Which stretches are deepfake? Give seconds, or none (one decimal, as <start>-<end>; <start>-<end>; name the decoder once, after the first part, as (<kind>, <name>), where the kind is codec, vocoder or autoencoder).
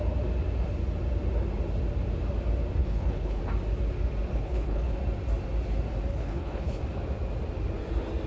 2.8-3.4 (codec, HILCodec); 4.3-5.0; 6.1-6.8